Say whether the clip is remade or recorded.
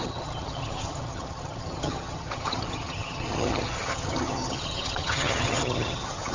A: remade